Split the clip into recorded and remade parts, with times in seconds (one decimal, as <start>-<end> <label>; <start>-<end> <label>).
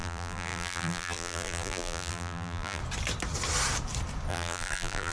0.0-2.8 remade; 2.8-4.3 recorded; 4.3-5.1 remade